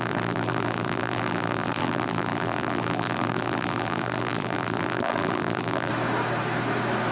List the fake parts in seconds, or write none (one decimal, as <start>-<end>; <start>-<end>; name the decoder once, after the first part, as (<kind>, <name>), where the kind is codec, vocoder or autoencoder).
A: 0.0-5.9 (vocoder, BigVGAN v2)